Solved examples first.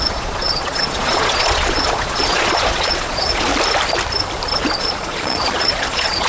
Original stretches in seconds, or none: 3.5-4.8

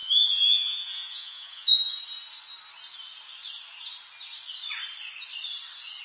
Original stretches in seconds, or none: 2.0-6.0

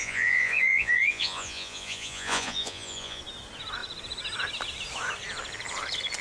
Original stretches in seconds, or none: 3.2-6.2

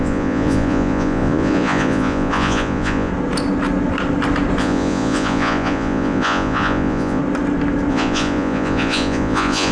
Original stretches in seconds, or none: 3.1-4.6; 7.2-7.9

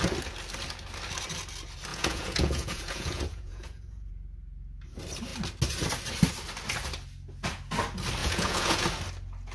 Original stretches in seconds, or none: 0.0-1.9; 4.1-8.2; 8.8-9.5

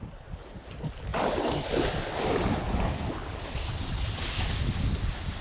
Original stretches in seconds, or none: 0.0-5.4